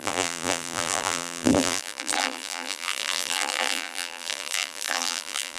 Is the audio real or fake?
fake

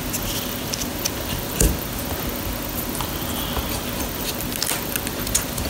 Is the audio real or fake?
real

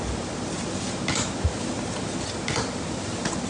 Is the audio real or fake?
real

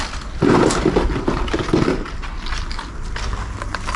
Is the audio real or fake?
real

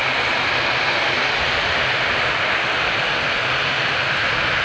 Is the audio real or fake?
real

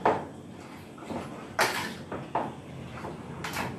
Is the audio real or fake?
real